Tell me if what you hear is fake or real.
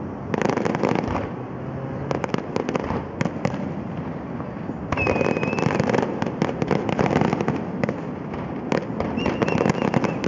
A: real